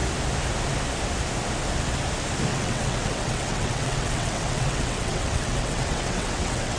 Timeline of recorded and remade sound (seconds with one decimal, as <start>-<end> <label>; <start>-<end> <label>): 0.0-2.5 recorded; 2.5-6.8 remade